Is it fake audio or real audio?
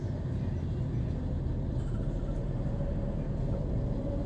real